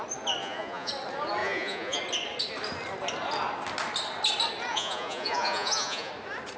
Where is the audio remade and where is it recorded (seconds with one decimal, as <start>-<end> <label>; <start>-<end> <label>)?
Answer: 0.0-0.4 recorded; 0.4-0.9 remade; 0.9-1.4 recorded; 1.4-2.0 remade; 2.0-4.7 recorded; 4.7-6.1 remade; 6.1-6.6 recorded

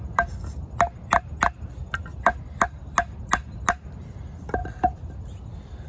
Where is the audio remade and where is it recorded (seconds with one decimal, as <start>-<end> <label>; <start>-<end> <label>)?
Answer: 0.0-5.9 recorded

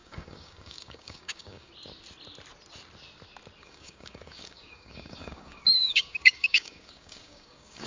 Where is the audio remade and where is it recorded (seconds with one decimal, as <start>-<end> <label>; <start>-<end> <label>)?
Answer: 0.0-1.7 remade; 1.7-3.6 recorded; 3.6-7.9 remade

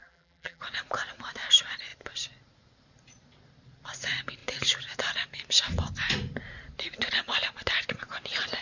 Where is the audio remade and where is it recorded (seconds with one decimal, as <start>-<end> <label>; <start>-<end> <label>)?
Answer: 0.0-0.6 remade; 0.6-8.6 recorded

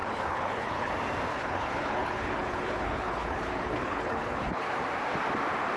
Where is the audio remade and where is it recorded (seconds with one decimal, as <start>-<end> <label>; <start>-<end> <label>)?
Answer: 0.0-0.9 remade; 0.9-1.3 recorded; 1.3-4.8 remade; 4.8-5.8 recorded